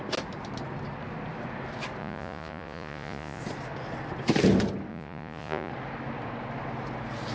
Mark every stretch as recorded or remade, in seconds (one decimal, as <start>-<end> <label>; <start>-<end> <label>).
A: 0.0-2.0 recorded; 2.0-3.4 remade; 3.4-4.9 recorded; 4.9-5.7 remade; 5.7-7.3 recorded